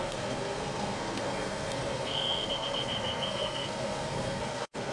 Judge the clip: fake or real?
fake